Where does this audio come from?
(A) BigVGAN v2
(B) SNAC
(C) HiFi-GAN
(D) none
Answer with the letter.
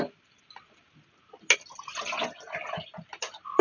D